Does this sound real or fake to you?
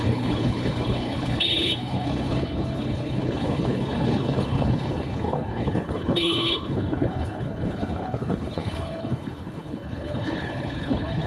fake